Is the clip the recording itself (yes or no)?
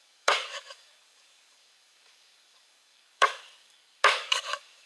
no